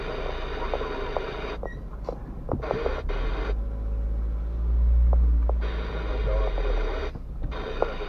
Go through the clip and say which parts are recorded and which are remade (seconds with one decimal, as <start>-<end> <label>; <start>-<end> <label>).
0.0-8.1 recorded